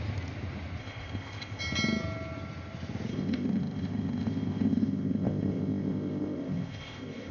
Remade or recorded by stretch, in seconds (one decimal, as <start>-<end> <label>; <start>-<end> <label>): 0.0-0.8 recorded; 0.8-1.6 remade; 1.6-3.1 recorded; 3.1-7.3 remade